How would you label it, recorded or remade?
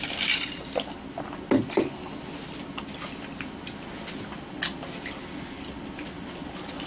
recorded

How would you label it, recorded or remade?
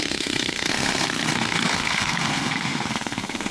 remade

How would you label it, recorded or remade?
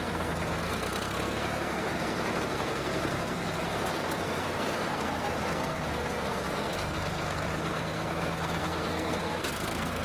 remade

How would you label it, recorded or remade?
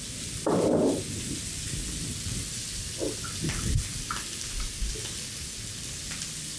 recorded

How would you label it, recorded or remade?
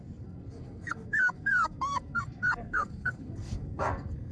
remade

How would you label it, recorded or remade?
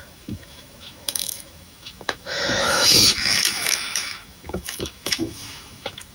remade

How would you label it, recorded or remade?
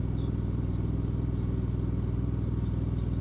recorded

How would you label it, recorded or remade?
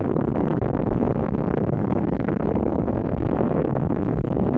remade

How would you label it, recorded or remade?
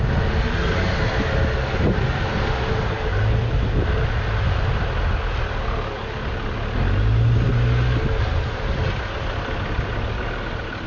recorded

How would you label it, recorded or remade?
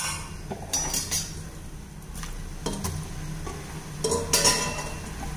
recorded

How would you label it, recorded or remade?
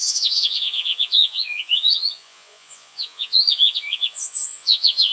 remade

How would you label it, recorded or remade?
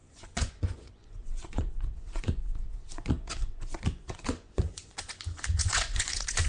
remade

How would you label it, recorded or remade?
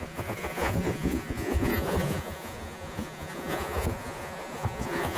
remade